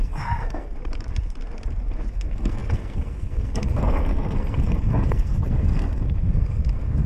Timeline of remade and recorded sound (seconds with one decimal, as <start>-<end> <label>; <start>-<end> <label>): 0.0-0.7 remade; 0.7-2.1 recorded; 2.1-7.1 remade